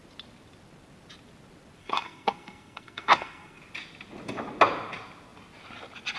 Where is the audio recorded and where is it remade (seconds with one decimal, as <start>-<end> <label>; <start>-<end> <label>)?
0.0-1.8 recorded; 1.8-3.6 remade; 3.6-6.2 recorded